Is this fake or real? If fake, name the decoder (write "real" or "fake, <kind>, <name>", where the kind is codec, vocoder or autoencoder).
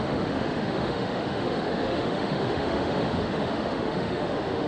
fake, autoencoder, DAC-VAE